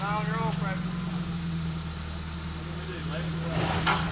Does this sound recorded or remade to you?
recorded